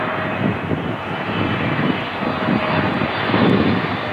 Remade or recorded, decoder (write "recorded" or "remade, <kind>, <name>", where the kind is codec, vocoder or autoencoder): recorded